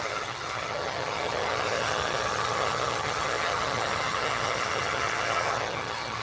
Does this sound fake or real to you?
fake